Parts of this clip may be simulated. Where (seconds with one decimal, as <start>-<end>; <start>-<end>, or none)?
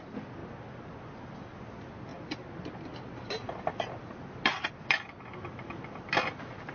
none